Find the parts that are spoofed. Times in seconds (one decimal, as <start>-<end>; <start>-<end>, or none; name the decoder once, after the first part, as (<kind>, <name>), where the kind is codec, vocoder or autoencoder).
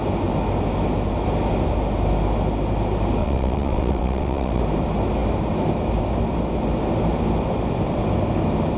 3.2-4.6 (vocoder, WaveNeXt)